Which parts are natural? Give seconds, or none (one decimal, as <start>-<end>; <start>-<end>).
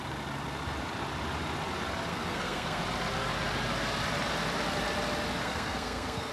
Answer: 0.0-2.1; 2.8-5.4